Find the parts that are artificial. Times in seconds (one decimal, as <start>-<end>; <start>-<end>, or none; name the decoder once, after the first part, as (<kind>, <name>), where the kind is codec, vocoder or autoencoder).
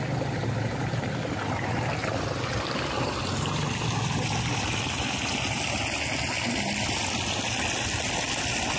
none